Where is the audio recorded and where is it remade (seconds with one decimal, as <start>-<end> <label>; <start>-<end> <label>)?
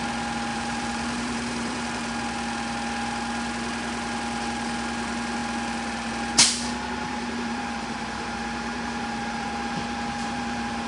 0.0-0.5 recorded; 0.5-2.1 remade; 2.1-7.1 recorded; 7.1-10.9 remade